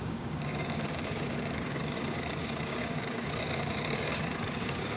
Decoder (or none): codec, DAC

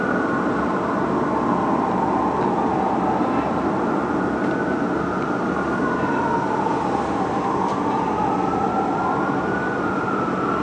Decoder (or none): none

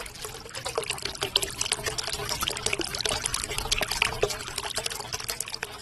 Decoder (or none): none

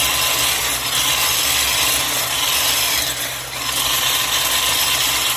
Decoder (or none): none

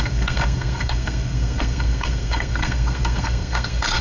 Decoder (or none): codec, SNAC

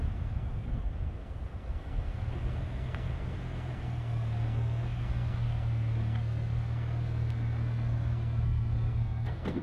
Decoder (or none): codec, SNAC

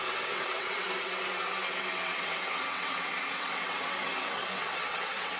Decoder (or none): vocoder, WaveNeXt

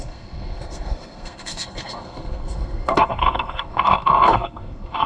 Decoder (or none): codec, SNAC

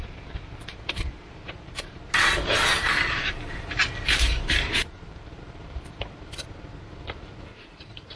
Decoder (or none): vocoder, BigVGAN v2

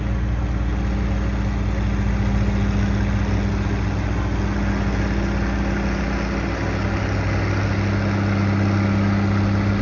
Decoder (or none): none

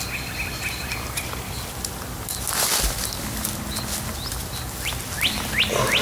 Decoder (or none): none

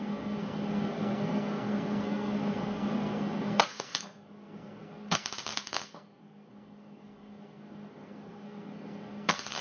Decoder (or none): codec, SNAC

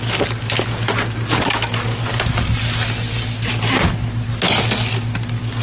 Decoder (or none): none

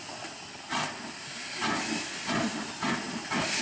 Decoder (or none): none